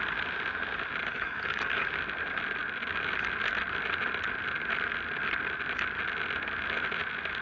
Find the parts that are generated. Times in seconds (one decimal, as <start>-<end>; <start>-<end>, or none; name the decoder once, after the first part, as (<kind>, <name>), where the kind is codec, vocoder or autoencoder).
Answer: 1.1-1.9 (codec, DAC)